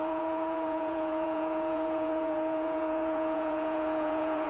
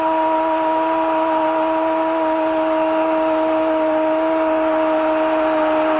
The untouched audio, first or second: second